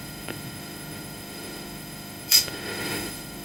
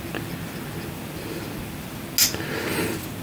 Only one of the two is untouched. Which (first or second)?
second